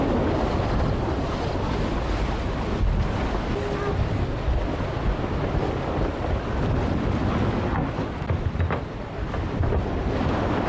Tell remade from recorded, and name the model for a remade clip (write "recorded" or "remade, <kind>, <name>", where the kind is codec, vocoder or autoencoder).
recorded